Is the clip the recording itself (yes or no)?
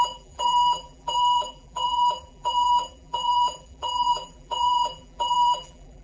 no